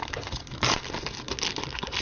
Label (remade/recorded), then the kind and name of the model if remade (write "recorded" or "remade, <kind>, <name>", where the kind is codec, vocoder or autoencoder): recorded